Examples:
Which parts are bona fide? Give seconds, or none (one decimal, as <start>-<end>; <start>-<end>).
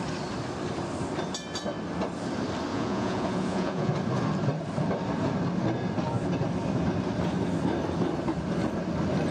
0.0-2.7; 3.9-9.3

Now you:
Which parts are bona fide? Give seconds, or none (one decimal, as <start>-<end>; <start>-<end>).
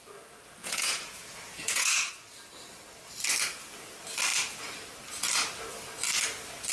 0.0-0.6; 2.1-6.7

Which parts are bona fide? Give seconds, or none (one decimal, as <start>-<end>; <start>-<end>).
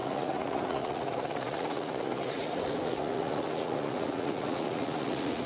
none